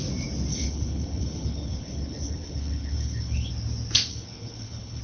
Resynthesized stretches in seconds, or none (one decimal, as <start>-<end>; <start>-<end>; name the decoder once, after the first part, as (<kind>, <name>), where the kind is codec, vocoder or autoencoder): 0.5-3.5 (codec, HILCodec); 4.1-5.0